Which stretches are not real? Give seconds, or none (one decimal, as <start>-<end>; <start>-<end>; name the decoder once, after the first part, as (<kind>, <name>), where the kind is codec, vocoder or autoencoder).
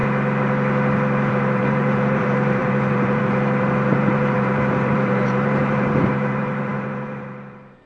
1.3-7.9 (vocoder, BigVGAN v2)